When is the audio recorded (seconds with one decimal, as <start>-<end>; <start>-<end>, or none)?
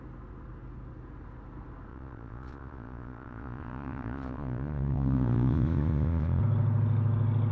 0.0-1.9; 6.4-7.5